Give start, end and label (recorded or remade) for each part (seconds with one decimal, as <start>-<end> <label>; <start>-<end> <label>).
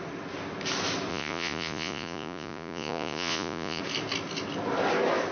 0.0-1.1 recorded; 1.1-3.8 remade; 3.8-5.3 recorded